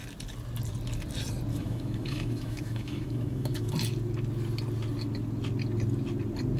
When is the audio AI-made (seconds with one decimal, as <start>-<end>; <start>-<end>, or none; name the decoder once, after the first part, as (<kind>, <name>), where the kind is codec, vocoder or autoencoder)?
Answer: 1.5-3.7 (autoencoder, DAC-VAE)